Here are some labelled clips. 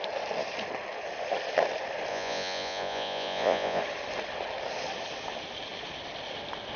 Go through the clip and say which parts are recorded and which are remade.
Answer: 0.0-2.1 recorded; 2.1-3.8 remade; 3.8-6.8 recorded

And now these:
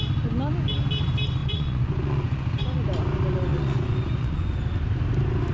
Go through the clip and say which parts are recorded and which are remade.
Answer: 0.0-1.4 recorded; 1.4-2.8 remade; 2.8-3.5 recorded; 3.5-4.6 remade; 4.6-5.5 recorded

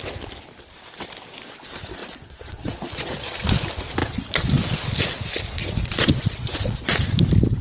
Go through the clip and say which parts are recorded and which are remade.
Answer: 0.0-2.0 recorded; 2.0-3.5 remade; 3.5-5.6 recorded; 5.6-7.0 remade; 7.0-7.6 recorded

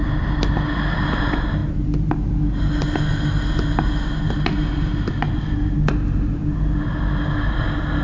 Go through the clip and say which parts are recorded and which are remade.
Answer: 0.0-8.0 recorded

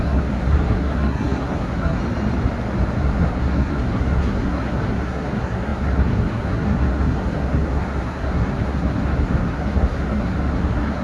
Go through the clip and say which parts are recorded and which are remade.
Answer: 0.0-2.0 remade; 2.0-3.0 recorded; 3.0-11.0 remade